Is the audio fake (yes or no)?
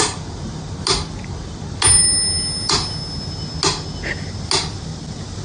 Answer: no